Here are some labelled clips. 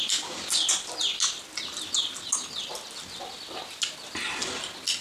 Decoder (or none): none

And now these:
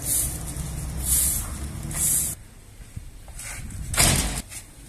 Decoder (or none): none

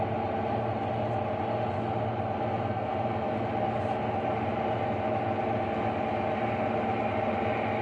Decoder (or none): none